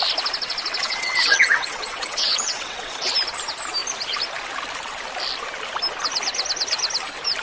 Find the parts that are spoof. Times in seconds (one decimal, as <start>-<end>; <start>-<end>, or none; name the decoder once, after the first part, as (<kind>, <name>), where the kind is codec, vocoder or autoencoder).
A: 0.8-3.1 (vocoder, WaveNeXt)